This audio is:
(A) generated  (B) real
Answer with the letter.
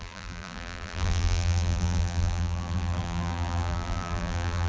A